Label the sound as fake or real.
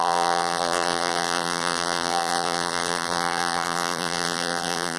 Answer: fake